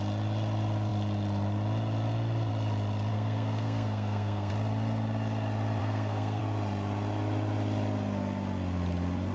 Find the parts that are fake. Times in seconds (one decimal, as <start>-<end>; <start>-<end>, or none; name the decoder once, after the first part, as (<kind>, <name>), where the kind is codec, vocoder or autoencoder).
3.1-4.5 (codec, SNAC); 5.8-6.4